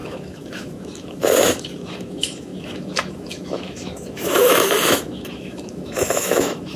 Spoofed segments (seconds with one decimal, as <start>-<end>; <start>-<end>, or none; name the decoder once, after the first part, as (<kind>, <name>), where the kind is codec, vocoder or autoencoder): 0.0-6.8 (autoencoder, DAC-VAE)